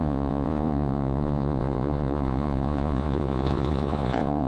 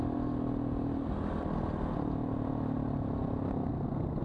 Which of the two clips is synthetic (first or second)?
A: first